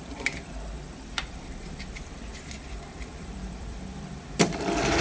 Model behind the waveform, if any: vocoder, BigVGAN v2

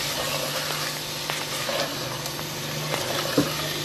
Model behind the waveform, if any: none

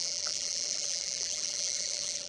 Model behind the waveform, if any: vocoder, BigVGAN v2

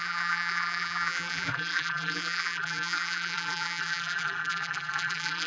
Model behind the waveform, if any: vocoder, BigVGAN v2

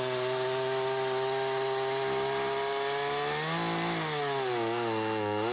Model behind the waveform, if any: none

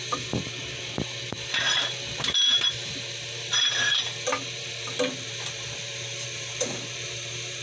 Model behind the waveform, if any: vocoder, BigVGAN v2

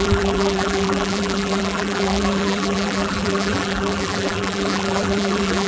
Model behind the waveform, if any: vocoder, BigVGAN v2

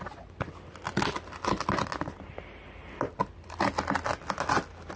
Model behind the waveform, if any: none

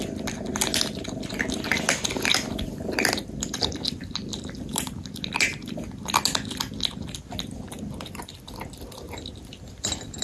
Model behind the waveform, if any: none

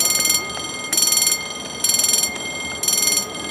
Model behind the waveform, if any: none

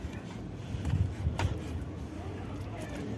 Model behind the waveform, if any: none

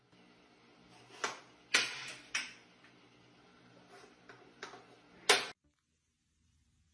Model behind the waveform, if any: none